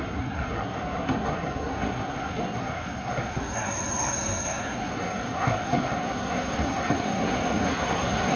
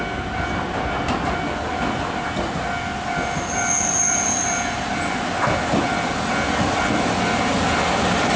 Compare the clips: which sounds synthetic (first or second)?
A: first